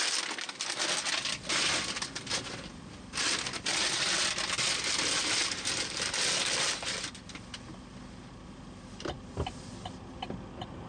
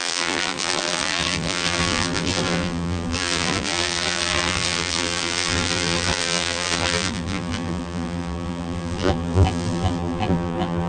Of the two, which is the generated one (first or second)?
second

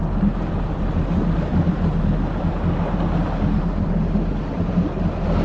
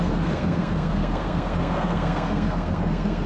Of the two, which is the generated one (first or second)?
second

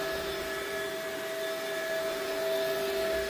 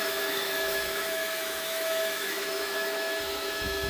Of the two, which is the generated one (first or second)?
second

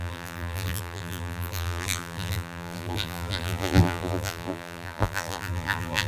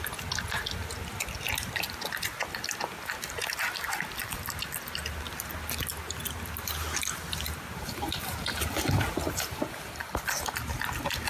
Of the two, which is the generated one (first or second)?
first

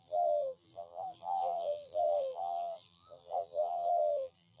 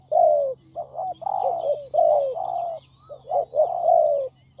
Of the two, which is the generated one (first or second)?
first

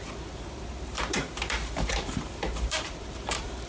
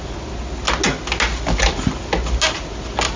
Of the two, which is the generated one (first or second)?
first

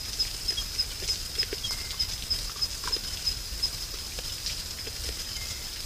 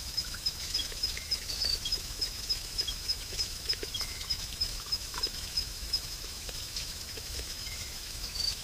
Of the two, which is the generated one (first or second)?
second